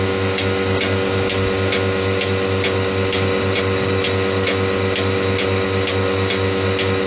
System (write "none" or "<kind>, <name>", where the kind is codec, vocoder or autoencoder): none